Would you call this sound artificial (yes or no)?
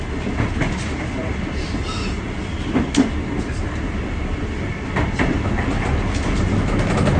no